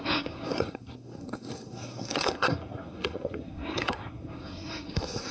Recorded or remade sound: remade